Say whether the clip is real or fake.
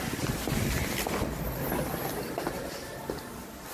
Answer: real